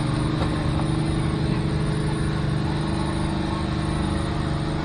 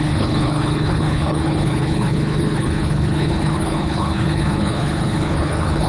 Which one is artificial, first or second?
second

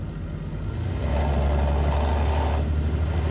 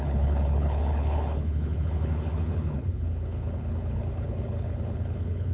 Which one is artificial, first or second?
second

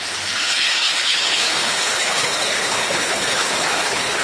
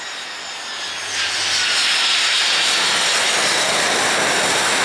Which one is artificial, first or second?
first